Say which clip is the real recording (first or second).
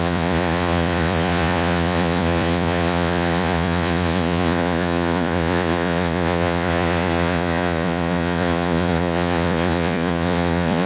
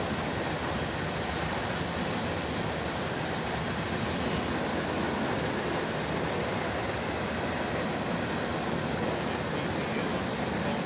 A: second